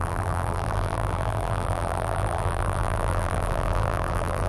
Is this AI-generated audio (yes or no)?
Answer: yes